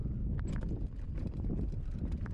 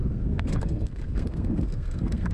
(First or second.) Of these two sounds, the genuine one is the first